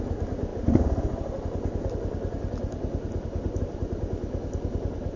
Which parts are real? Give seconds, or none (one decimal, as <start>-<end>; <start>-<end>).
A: 0.0-5.2